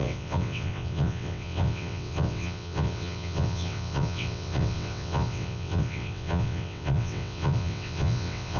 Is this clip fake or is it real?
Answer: fake